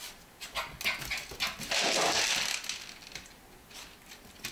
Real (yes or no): yes